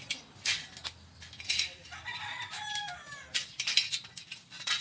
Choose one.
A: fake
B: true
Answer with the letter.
B